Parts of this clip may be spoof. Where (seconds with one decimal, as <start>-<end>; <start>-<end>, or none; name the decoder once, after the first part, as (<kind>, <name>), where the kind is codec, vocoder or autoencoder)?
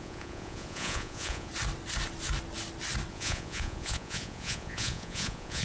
0.0-1.5 (vocoder, Vocos); 3.1-5.6